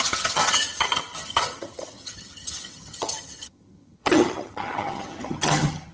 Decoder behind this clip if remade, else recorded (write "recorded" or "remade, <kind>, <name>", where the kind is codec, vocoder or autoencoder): remade, vocoder, HiFi-GAN